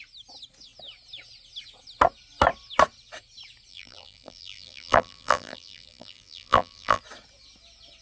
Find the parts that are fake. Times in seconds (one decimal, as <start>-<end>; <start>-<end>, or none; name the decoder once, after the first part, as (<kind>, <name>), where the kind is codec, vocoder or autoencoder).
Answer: 3.7-7.0 (vocoder, BigVGAN v2)